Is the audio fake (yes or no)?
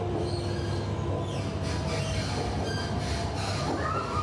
no